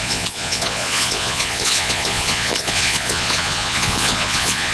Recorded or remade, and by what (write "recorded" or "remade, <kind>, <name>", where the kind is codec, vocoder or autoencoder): remade, vocoder, Vocos